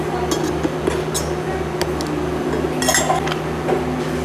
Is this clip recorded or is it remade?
recorded